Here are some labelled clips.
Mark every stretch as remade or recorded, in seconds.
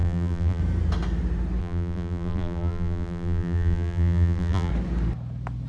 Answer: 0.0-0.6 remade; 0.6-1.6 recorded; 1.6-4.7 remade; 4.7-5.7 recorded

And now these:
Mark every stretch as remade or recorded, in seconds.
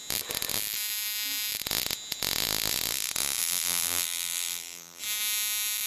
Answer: 0.0-3.4 recorded; 3.4-5.0 remade; 5.0-5.9 recorded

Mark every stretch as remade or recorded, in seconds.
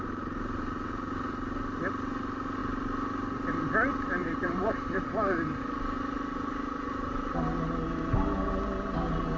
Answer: 0.0-4.2 recorded; 4.2-5.6 remade; 5.6-9.4 recorded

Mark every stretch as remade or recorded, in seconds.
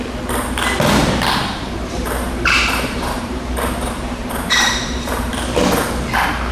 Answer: 0.0-1.4 recorded; 1.4-5.3 remade; 5.3-6.5 recorded